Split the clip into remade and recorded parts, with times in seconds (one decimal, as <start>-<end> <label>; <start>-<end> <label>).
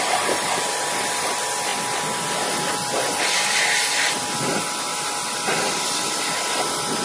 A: 0.0-7.0 remade